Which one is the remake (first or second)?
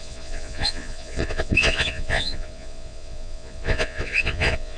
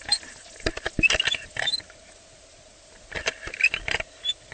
first